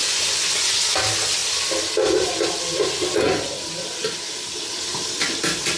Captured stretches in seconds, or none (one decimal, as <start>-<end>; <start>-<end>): 0.8-5.8